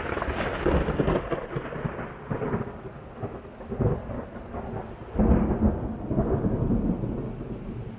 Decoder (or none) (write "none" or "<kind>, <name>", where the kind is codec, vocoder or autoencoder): none